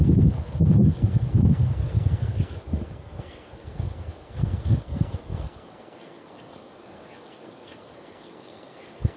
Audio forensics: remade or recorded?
remade